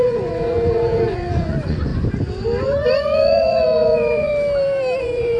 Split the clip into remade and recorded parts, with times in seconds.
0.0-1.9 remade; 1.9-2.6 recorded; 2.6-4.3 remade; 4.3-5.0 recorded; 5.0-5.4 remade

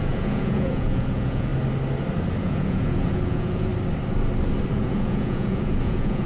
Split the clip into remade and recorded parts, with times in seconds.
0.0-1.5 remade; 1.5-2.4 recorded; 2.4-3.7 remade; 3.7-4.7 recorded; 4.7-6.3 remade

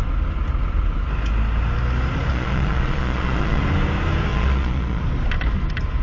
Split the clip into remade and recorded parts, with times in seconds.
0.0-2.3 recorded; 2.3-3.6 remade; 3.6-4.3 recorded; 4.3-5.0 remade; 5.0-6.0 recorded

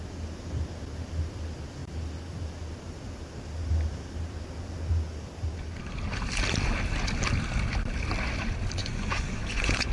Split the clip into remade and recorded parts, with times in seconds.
0.0-8.8 recorded; 8.8-9.9 remade

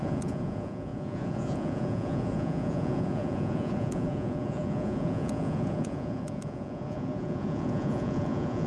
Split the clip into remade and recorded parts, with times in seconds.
0.0-8.7 remade

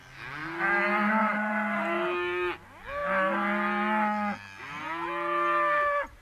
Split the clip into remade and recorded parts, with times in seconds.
0.0-6.2 recorded

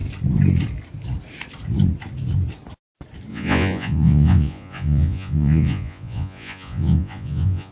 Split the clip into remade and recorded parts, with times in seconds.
0.0-3.3 recorded; 3.3-7.7 remade